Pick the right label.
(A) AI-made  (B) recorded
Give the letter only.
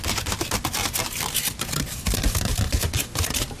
B